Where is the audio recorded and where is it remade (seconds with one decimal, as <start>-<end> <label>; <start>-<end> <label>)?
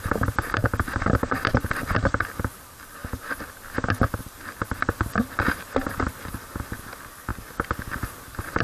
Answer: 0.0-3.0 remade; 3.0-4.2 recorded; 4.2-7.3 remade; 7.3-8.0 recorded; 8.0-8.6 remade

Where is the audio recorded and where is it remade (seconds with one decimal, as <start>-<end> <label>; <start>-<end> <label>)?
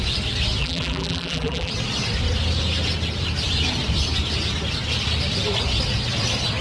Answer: 0.0-0.6 recorded; 0.6-1.7 remade; 1.7-6.6 recorded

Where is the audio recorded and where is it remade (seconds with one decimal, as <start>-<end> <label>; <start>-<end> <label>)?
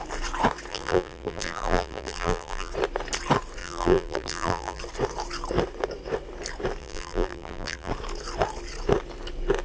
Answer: 0.0-0.7 recorded; 0.7-2.7 remade; 2.7-3.6 recorded; 3.6-4.8 remade; 4.8-6.8 recorded; 6.8-7.9 remade; 7.9-9.6 recorded